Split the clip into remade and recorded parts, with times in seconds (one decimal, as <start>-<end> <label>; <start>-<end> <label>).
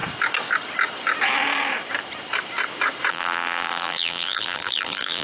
0.0-3.1 recorded; 3.1-5.2 remade